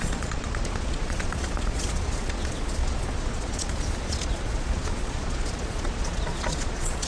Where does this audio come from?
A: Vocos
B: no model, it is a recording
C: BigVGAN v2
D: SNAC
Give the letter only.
A